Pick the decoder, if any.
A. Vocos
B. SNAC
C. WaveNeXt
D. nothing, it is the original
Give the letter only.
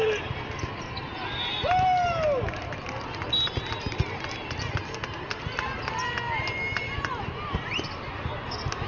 D